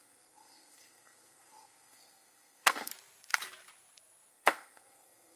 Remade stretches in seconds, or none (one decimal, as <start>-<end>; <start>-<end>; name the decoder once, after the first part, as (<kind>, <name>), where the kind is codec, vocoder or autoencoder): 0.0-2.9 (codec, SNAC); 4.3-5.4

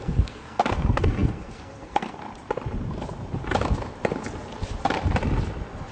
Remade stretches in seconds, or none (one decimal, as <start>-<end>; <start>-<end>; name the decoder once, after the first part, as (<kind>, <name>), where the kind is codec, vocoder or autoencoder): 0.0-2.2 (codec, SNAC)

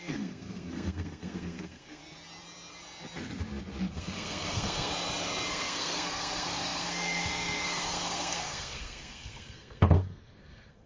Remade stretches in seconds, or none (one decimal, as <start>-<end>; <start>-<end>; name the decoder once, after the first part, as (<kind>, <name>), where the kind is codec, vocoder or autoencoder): 0.0-2.0 (codec, SNAC); 3.9-4.9; 5.5-10.9